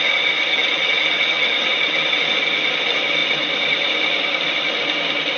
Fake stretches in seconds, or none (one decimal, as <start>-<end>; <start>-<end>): 0.5-2.2